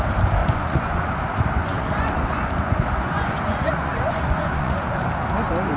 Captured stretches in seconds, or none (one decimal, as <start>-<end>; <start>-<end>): 0.0-0.4; 1.1-1.6; 5.1-5.8